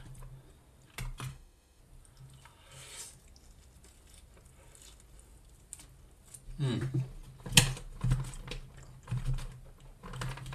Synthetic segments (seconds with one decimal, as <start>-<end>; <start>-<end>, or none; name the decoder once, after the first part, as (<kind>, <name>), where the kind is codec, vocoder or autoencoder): 1.3-1.8 (autoencoder, DAC-VAE)